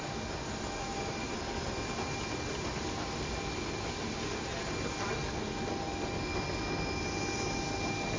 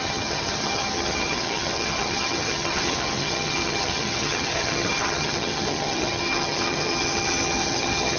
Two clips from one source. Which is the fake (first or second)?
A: second